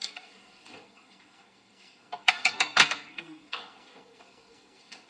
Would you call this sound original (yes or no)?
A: no